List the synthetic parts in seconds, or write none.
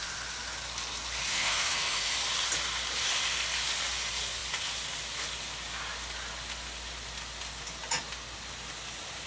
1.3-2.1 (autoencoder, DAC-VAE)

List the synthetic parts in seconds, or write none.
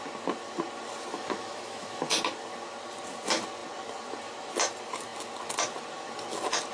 1.1-2.0 (autoencoder, DAC-VAE)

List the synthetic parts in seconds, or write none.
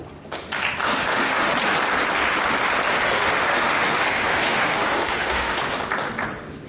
0.8-1.5 (autoencoder, DAC-VAE); 2.9-5.6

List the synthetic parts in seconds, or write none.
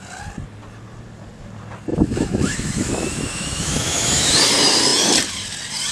1.9-4.3 (autoencoder, DAC-VAE)